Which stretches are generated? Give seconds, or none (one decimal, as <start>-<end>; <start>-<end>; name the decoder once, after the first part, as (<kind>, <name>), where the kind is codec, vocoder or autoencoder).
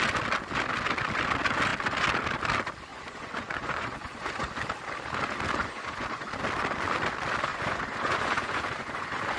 2.9-4.5 (vocoder, Vocos); 5.6-6.3; 7.5-9.4